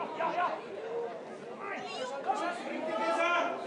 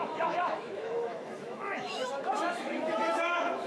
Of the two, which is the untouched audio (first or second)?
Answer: first